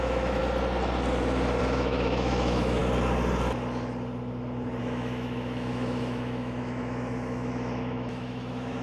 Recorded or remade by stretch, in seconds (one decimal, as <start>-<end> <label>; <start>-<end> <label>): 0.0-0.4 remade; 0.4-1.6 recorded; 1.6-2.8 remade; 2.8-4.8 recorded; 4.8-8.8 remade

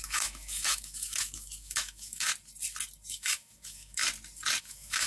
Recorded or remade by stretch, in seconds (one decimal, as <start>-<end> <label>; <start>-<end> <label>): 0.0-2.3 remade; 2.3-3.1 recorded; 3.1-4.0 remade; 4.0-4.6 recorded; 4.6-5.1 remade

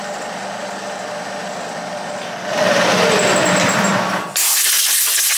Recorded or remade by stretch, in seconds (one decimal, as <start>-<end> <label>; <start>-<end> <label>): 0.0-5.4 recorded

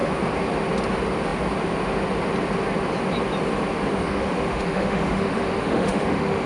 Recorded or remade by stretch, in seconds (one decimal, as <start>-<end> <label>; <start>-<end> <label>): 0.0-3.9 recorded; 3.9-6.5 remade